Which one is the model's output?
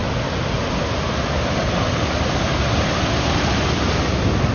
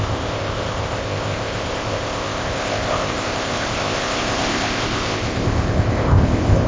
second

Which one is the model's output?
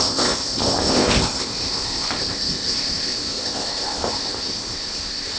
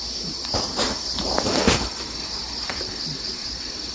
first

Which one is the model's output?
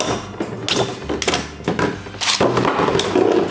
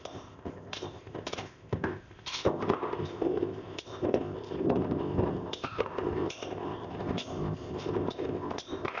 second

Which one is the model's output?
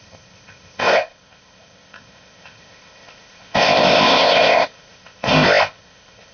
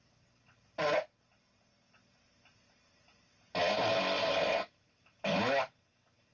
first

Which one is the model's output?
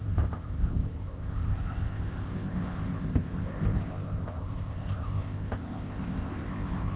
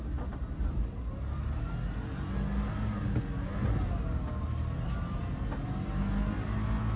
first